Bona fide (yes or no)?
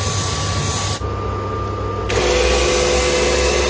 yes